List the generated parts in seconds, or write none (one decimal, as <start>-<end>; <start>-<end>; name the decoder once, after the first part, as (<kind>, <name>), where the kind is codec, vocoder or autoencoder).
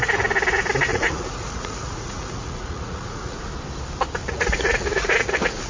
0.9-3.4 (vocoder, Vocos); 4.2-5.7